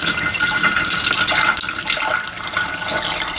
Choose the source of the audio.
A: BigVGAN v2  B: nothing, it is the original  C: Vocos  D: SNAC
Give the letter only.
B